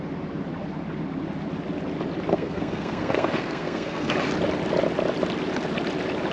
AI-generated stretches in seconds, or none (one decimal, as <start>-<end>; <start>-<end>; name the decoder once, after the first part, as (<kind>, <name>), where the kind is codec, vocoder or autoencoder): 2.3-4.1 (codec, SNAC)